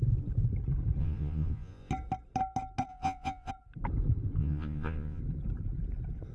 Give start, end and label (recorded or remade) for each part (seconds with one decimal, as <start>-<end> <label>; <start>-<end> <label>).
0.0-1.0 recorded; 1.0-1.9 remade; 1.9-2.9 recorded; 2.9-3.5 remade; 3.5-4.4 recorded; 4.4-5.2 remade; 5.2-6.3 recorded

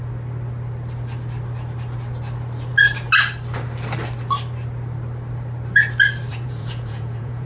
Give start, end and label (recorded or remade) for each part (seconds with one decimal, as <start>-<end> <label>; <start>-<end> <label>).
0.0-6.3 recorded; 6.3-7.5 remade

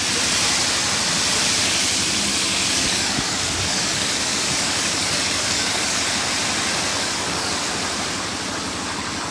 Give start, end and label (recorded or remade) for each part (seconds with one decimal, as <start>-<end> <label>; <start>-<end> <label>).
0.0-2.3 recorded; 2.3-6.0 remade; 6.0-6.9 recorded; 6.9-7.7 remade; 7.7-9.3 recorded

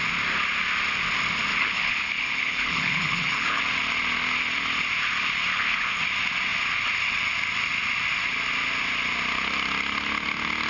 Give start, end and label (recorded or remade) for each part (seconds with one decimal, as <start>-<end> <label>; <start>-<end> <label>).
0.0-1.5 recorded; 1.5-3.6 remade; 3.6-5.5 recorded; 5.5-6.0 remade; 6.0-10.7 recorded

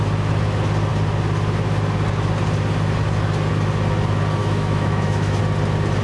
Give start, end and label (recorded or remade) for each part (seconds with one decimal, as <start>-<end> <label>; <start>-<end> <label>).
0.0-4.4 recorded; 4.4-5.4 remade; 5.4-6.0 recorded

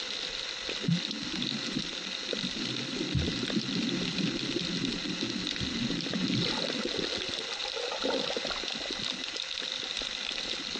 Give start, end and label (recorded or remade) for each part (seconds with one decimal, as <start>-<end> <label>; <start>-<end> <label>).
0.0-10.8 recorded